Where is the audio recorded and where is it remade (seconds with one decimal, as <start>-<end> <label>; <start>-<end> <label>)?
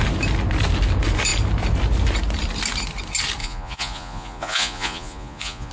0.0-3.4 recorded; 3.4-5.7 remade